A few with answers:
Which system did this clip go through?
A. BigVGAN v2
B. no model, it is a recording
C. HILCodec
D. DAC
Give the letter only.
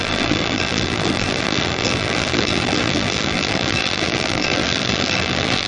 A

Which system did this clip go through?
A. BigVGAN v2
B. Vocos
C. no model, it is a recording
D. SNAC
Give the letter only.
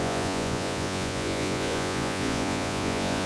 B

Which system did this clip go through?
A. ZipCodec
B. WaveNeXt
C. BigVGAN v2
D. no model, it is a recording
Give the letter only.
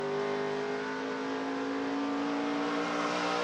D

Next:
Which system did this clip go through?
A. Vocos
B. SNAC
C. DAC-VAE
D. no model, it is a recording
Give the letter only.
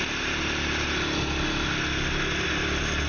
D